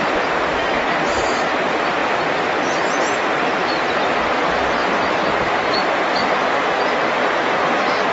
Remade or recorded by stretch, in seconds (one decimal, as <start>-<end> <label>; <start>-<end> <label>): 0.0-2.0 remade; 2.0-2.7 recorded; 2.7-4.8 remade; 4.8-8.1 recorded